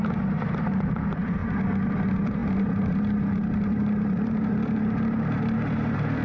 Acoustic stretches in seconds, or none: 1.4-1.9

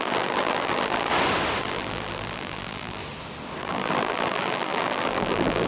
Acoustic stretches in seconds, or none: 1.1-1.6; 3.0-3.6

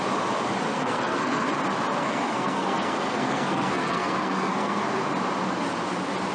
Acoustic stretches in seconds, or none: 0.0-0.7; 1.5-2.0; 4.8-6.3

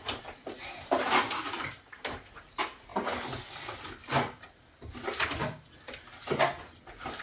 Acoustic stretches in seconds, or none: 0.0-0.4; 2.5-7.2

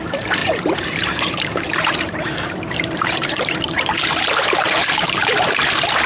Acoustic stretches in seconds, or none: none

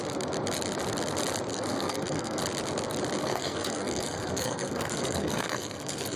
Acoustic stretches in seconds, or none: 0.0-1.5; 2.4-3.2

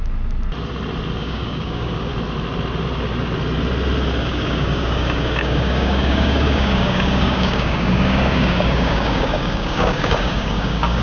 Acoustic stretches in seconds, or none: 0.0-1.2; 2.1-4.2

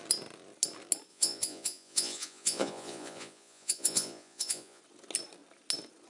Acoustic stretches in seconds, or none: 0.0-1.1; 4.8-6.1